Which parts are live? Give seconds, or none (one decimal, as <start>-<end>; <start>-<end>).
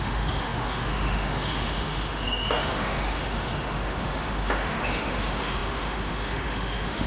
none